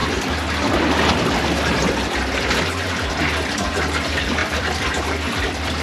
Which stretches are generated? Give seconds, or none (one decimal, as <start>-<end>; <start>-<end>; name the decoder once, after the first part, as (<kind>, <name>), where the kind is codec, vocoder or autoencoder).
1.9-5.8 (vocoder, BigVGAN v2)